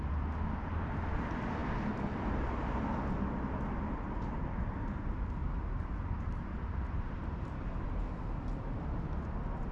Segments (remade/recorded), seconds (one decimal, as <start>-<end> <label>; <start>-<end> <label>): 0.0-5.4 recorded; 5.4-8.0 remade; 8.0-9.7 recorded